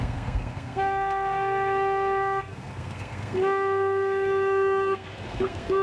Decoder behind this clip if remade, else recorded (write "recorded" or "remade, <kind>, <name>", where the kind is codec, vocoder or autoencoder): remade, codec, SNAC